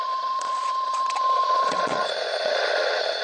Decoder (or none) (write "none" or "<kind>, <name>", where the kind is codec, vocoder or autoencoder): vocoder, Vocos